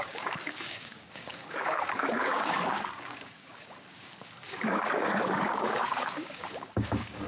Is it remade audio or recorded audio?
remade